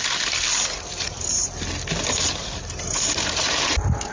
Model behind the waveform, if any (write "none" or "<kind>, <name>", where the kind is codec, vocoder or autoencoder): none